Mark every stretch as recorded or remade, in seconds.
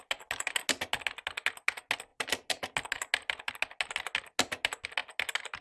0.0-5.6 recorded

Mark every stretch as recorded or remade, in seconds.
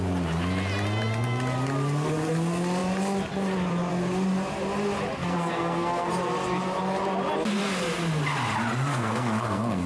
0.0-5.2 recorded; 5.2-6.1 remade; 6.1-8.9 recorded; 8.9-9.9 remade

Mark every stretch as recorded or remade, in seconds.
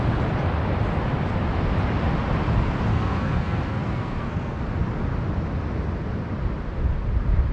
0.0-2.9 recorded; 2.9-4.6 remade; 4.6-7.5 recorded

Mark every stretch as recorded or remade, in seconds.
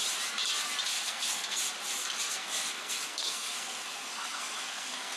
0.0-0.9 recorded; 0.9-1.6 remade; 1.6-2.0 recorded; 2.0-5.2 remade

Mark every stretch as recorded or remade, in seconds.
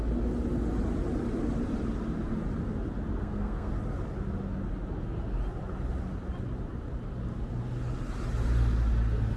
0.0-3.2 recorded; 3.2-3.7 remade; 3.7-9.4 recorded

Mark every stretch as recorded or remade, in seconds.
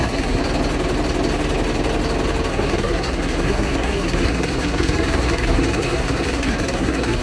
0.0-0.4 remade; 0.4-2.5 recorded; 2.5-7.2 remade